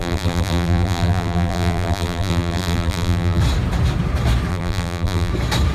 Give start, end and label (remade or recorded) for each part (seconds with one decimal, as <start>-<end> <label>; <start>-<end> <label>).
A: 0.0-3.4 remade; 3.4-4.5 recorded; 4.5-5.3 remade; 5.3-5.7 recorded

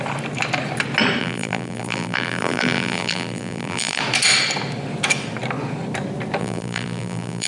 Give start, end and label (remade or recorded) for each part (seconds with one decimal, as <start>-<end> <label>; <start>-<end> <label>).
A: 0.0-1.2 recorded; 1.2-4.0 remade; 4.0-6.4 recorded; 6.4-7.5 remade

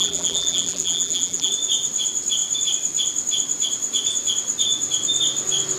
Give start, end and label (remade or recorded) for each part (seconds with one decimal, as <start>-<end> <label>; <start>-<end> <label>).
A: 0.0-1.5 remade; 1.5-5.8 recorded

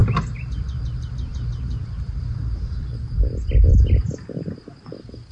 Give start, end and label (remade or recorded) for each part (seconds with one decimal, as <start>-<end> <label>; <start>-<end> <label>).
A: 0.0-1.8 recorded; 1.8-2.6 remade; 2.6-5.3 recorded

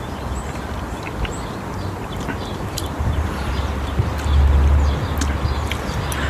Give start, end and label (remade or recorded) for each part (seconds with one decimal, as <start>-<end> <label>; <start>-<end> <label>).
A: 0.0-2.5 recorded; 2.5-3.5 remade; 3.5-6.3 recorded